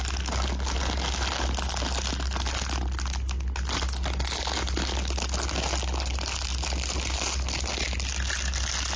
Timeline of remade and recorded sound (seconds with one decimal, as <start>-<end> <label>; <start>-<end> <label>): 0.0-9.0 recorded